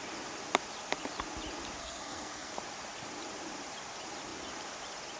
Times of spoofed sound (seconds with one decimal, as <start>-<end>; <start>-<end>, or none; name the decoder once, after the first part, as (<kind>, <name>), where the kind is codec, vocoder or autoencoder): 1.8-2.5 (codec, SNAC)